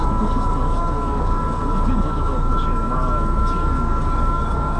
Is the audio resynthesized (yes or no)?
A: yes